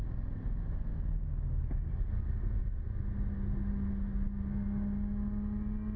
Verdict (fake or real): real